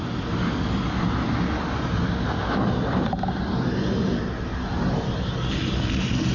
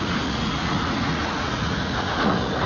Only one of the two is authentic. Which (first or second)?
first